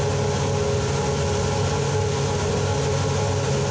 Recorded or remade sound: recorded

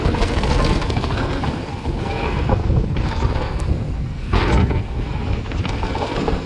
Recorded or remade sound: remade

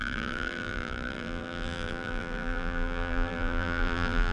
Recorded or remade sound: remade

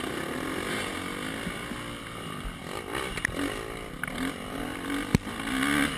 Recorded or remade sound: recorded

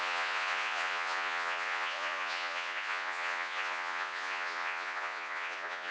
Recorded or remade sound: remade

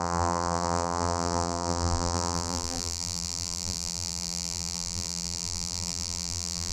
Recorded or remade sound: remade